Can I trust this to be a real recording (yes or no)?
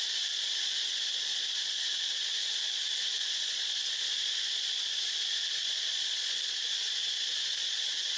no